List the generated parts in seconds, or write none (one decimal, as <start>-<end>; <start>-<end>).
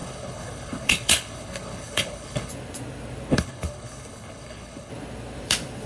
0.0-2.5; 3.3-4.9